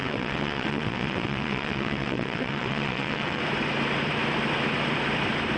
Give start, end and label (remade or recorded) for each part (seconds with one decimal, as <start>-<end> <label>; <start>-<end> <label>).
0.0-3.4 remade; 3.4-5.6 recorded